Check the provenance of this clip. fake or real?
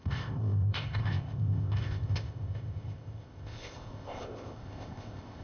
fake